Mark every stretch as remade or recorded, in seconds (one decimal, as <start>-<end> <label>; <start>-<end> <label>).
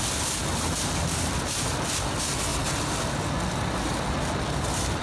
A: 0.0-2.5 recorded; 2.5-5.0 remade